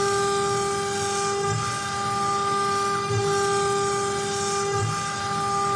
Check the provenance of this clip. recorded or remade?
recorded